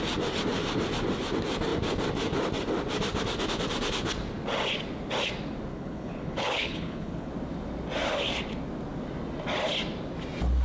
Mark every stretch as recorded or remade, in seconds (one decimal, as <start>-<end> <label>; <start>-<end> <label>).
0.0-5.7 recorded; 5.7-7.3 remade; 7.3-10.6 recorded